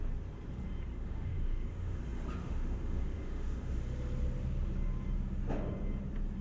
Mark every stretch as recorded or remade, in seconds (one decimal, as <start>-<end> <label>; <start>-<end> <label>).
0.0-0.9 recorded; 0.9-2.0 remade; 2.0-2.4 recorded; 2.4-3.8 remade; 3.8-6.4 recorded